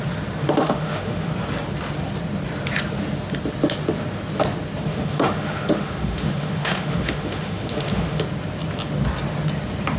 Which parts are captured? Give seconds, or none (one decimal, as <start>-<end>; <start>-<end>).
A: 0.0-0.4; 1.3-4.9; 8.2-10.0